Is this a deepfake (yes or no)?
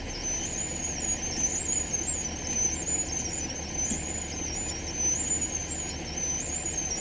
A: no